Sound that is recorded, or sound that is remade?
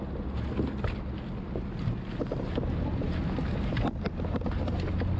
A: recorded